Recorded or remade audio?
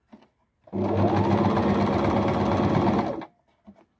recorded